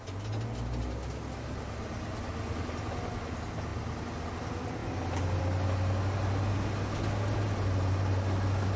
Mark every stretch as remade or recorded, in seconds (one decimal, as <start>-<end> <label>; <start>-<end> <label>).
0.0-8.8 recorded